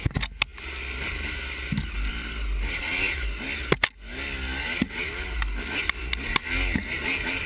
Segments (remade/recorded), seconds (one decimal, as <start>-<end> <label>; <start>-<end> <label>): 0.0-7.5 recorded